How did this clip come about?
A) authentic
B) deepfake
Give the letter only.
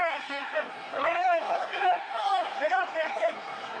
B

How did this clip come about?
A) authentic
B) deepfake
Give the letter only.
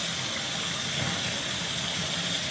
A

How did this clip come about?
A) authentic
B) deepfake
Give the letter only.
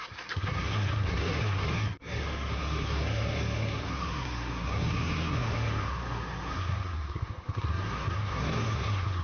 B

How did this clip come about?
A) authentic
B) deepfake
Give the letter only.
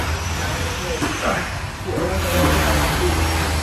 A